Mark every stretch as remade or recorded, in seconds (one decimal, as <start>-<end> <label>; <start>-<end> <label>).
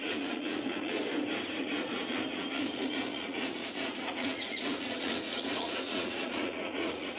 0.0-1.0 remade; 1.0-1.6 recorded; 1.6-7.2 remade